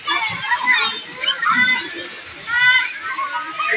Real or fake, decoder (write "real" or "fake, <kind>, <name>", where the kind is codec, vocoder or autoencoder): real